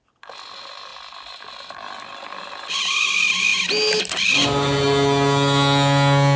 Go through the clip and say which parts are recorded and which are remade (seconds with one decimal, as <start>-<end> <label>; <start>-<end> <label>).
0.0-6.4 recorded